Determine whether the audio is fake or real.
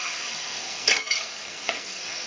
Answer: fake